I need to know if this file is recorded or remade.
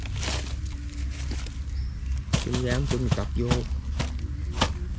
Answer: recorded